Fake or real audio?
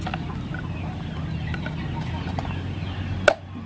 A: real